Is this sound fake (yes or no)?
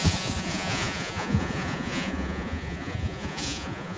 yes